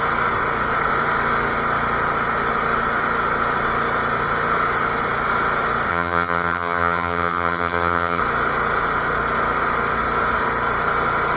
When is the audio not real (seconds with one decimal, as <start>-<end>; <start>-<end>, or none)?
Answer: 5.9-8.2